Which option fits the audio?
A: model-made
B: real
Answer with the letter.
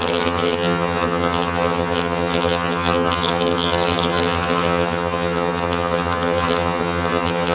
A